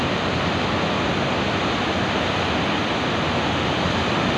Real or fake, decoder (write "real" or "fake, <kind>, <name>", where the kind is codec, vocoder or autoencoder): real